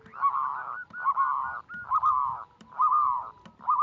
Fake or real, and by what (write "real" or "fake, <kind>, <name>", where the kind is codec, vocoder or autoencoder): real